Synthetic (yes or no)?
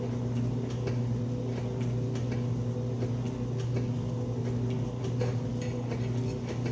no